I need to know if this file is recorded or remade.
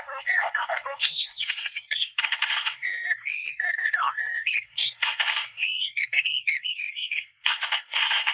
remade